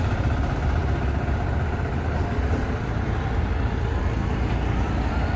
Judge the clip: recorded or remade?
recorded